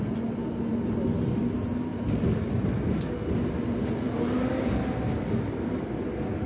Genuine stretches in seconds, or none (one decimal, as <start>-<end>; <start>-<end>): 0.0-6.5